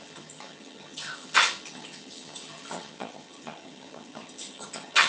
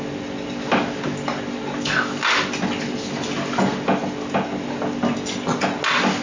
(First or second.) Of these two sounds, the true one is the second